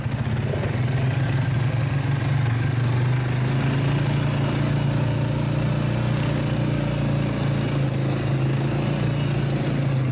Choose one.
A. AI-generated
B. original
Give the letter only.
B